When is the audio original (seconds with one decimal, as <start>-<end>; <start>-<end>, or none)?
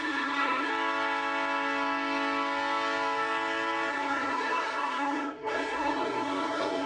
0.7-3.9